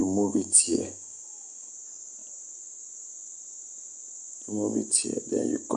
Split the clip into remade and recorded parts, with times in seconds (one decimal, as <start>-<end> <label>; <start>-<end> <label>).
0.0-1.7 remade; 1.7-5.8 recorded